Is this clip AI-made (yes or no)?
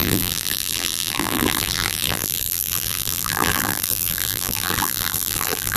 yes